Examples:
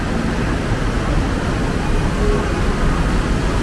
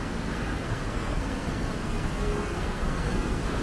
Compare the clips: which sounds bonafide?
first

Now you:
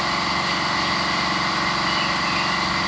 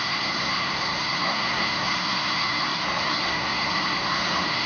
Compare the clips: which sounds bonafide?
first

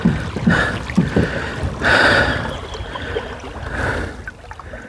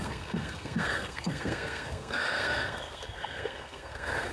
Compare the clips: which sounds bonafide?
first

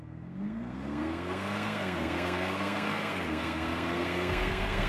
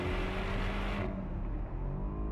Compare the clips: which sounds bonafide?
second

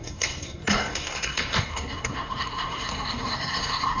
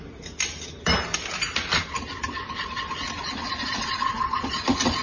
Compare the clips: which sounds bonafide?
second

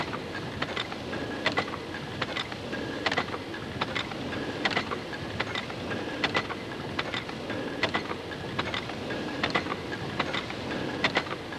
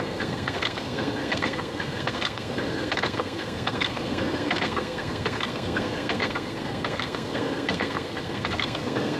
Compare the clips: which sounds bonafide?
first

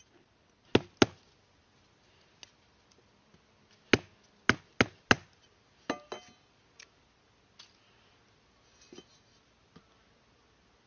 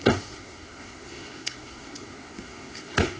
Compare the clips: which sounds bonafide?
first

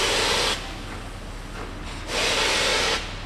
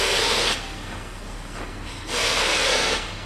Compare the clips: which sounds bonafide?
first